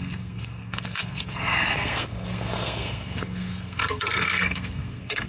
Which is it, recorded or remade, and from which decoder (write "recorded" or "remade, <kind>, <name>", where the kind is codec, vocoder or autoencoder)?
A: remade, codec, SNAC